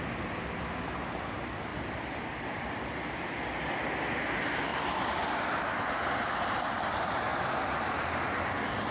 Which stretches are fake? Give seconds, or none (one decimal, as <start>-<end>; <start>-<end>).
1.7-2.8; 4.7-5.6; 7.3-7.8